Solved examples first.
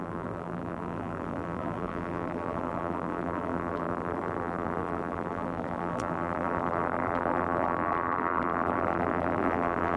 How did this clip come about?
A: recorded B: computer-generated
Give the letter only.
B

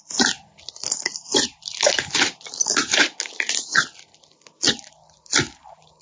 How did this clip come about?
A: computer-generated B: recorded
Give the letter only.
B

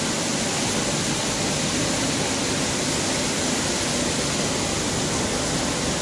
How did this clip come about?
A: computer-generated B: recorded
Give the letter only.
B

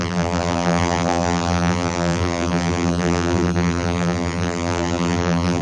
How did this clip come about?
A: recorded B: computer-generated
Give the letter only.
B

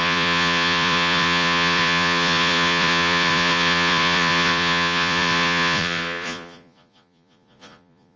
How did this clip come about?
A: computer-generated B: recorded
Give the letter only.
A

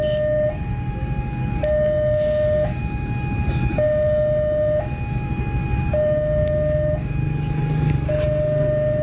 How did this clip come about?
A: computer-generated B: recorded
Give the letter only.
A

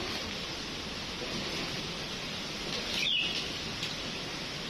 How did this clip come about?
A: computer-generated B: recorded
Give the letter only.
B